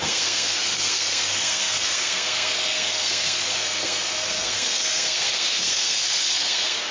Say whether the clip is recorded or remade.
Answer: remade